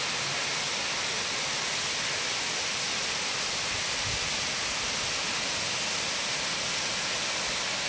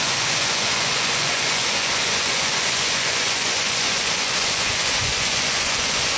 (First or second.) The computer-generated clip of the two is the second